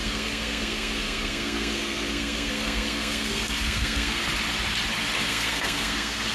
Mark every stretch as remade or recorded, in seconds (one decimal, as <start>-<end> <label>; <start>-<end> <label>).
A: 0.0-4.2 remade; 4.2-5.3 recorded; 5.3-6.3 remade